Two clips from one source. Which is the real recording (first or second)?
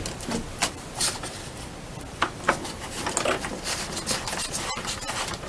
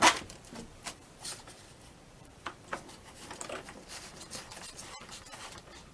first